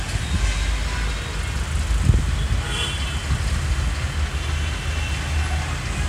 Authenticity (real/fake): real